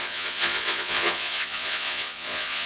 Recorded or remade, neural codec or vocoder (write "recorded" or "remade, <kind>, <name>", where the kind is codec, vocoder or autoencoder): remade, vocoder, Vocos